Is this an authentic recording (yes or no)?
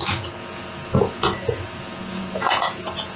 no